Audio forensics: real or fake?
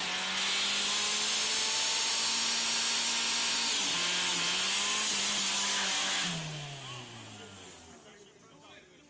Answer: real